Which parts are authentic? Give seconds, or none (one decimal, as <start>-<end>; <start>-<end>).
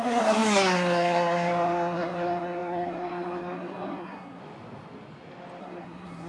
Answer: 4.4-5.6